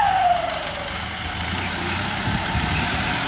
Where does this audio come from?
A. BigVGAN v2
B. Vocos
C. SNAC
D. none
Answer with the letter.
D